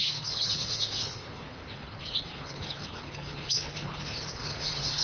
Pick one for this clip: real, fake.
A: fake